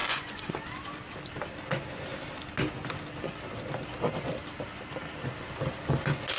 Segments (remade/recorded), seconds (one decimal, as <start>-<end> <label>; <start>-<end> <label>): 0.0-0.5 remade; 0.5-6.4 recorded